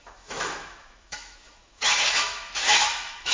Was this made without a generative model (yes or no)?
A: no